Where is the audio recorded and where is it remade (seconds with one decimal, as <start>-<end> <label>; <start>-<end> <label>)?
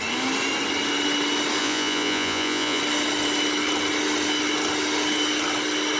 0.0-1.6 recorded; 1.6-2.8 remade; 2.8-6.0 recorded